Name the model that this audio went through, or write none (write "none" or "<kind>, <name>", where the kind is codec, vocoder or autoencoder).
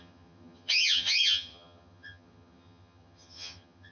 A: vocoder, HiFi-GAN